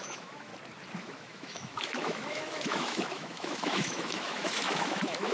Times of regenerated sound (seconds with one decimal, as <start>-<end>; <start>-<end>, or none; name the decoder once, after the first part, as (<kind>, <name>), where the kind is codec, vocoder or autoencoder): 0.0-0.5 (autoencoder, DAC-VAE); 1.0-5.3